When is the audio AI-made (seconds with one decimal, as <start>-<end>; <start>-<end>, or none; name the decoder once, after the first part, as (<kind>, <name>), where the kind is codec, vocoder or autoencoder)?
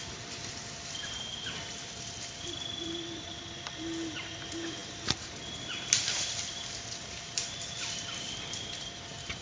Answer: 0.0-9.4 (vocoder, BigVGAN v2)